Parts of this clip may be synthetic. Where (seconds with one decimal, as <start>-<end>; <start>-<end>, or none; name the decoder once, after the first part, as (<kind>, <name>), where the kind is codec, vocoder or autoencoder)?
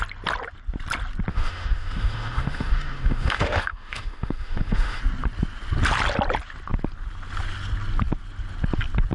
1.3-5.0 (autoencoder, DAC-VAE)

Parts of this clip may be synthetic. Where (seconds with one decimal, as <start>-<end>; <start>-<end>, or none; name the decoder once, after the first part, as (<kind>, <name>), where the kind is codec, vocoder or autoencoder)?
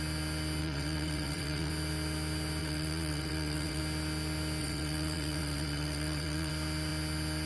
0.6-1.7 (vocoder, WaveNeXt); 2.6-3.8; 4.6-6.5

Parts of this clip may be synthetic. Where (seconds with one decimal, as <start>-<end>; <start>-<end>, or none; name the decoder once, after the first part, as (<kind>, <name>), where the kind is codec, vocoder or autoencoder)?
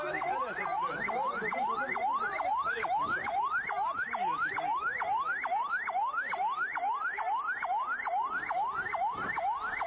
0.0-9.9 (vocoder, BigVGAN v2)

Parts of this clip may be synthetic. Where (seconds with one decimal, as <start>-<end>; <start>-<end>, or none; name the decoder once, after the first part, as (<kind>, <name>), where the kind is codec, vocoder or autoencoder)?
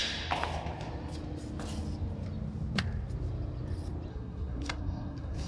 4.1-5.5 (codec, SNAC)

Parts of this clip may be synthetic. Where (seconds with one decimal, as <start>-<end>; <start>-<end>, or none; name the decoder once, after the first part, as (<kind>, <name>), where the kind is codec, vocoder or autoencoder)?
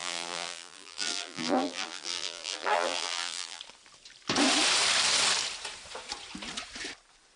0.0-3.6 (vocoder, BigVGAN v2)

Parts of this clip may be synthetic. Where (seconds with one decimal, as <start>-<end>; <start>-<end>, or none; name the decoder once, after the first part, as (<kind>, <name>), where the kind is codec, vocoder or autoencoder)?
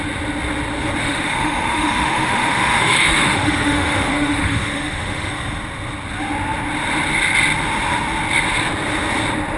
1.0-5.3 (autoencoder, DAC-VAE)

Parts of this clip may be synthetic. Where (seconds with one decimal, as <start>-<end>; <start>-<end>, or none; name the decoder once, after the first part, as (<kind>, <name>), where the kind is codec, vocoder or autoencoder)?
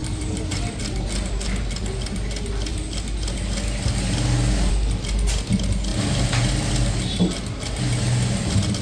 0.0-0.8 (vocoder, BigVGAN v2); 5.9-6.7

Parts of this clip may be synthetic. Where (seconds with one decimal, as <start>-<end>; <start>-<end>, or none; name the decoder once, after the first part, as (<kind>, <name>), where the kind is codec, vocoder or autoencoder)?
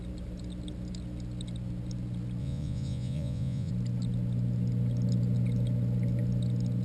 2.4-3.7 (vocoder, Vocos)